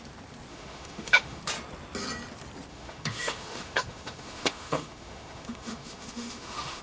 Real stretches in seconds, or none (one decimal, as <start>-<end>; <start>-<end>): 0.0-0.5; 1.4-2.7